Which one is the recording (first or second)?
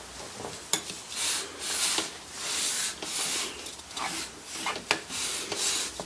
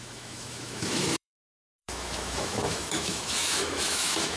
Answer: first